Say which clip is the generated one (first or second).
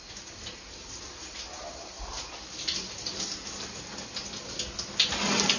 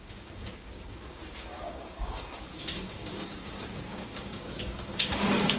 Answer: second